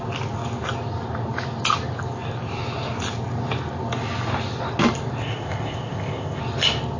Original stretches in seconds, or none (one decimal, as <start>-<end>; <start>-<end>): 0.0-5.2; 6.4-7.0